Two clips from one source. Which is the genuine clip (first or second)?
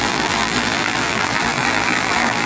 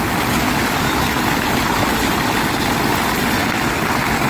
second